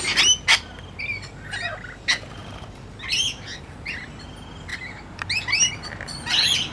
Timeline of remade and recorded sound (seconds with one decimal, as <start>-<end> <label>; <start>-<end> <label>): 0.0-4.7 recorded; 4.7-5.7 remade; 5.7-6.7 recorded